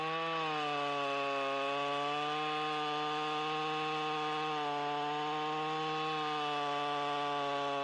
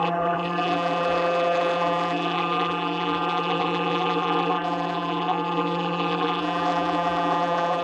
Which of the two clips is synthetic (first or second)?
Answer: second